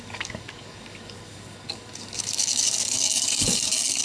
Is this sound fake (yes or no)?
yes